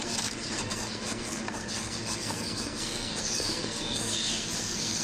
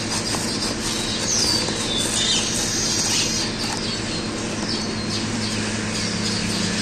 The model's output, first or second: first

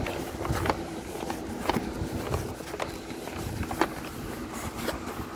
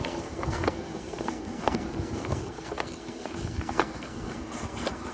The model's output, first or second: second